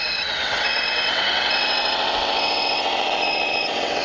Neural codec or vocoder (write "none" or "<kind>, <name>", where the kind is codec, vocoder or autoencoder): vocoder, WaveNeXt